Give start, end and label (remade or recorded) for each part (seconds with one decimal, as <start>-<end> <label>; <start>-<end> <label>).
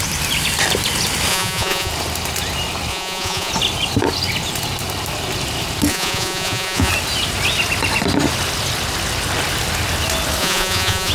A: 0.0-1.3 recorded; 1.3-1.9 remade; 1.9-2.9 recorded; 2.9-3.5 remade; 3.5-5.9 recorded; 5.9-6.9 remade; 6.9-10.4 recorded; 10.4-11.1 remade